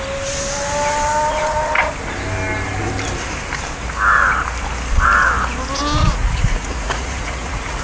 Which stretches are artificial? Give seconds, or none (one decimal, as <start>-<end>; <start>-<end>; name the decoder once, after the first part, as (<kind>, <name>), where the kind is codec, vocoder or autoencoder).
6.0-7.8 (vocoder, Vocos)